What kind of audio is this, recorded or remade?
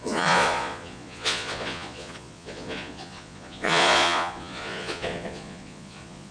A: remade